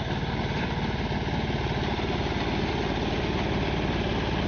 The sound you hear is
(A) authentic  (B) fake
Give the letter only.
A